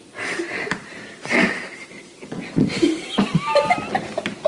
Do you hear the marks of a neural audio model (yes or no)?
no